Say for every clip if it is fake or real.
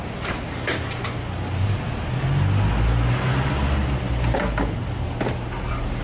real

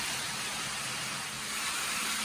real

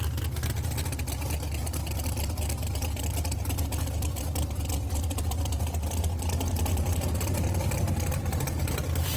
real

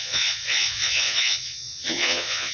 fake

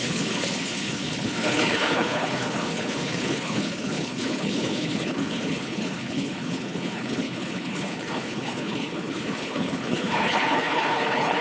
fake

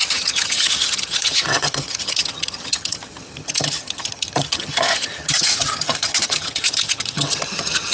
fake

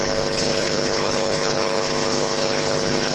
fake